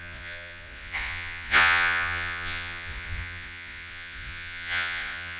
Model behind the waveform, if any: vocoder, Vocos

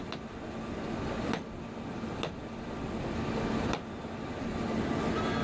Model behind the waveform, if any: none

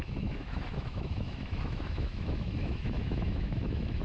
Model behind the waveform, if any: autoencoder, DAC-VAE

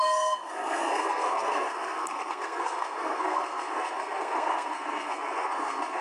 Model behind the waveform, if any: codec, SNAC